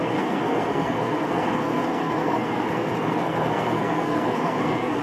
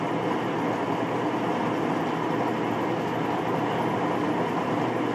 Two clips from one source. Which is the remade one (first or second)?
first